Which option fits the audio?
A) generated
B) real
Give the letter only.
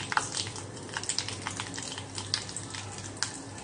B